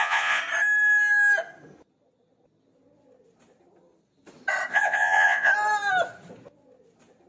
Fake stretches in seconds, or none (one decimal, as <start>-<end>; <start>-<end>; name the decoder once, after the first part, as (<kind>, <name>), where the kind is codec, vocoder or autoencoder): 0.0-0.4 (vocoder, Vocos); 4.7-5.5